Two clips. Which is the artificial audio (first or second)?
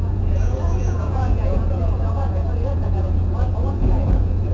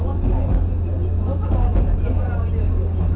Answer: first